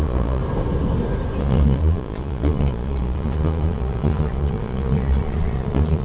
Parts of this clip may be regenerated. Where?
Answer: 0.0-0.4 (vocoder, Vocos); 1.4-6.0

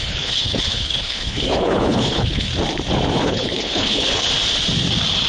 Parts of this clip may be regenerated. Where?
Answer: 0.0-2.5 (codec, HILCodec); 3.1-4.3

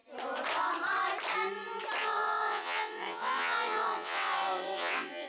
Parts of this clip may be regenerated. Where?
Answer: 2.0-5.3 (vocoder, WaveNeXt)

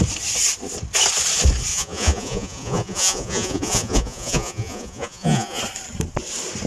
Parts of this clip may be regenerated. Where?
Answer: 1.7-5.6 (vocoder, Vocos)